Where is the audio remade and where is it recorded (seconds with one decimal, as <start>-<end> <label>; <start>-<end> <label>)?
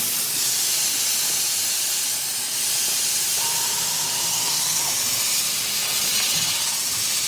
0.0-4.3 recorded; 4.3-4.8 remade; 4.8-7.3 recorded